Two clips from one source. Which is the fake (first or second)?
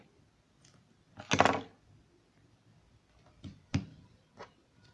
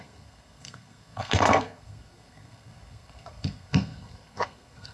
second